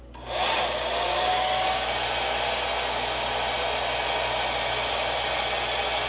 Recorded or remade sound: recorded